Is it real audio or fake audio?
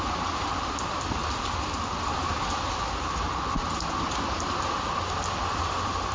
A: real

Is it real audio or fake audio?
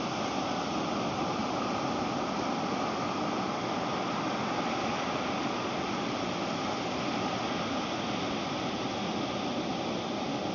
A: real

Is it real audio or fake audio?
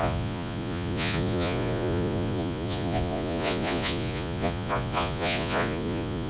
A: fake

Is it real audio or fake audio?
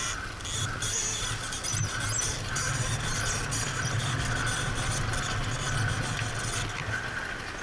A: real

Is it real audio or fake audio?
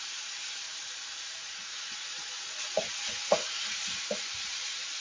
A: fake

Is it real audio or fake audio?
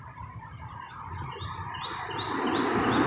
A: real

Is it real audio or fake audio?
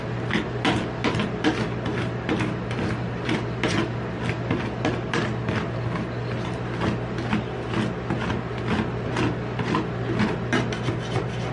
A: real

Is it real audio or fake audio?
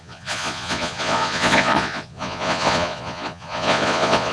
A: fake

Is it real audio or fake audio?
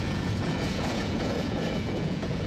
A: fake